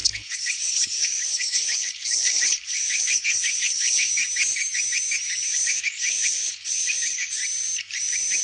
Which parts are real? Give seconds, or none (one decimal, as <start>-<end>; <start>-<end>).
4.1-5.5; 7.4-8.4